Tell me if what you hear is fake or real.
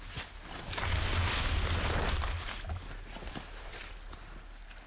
real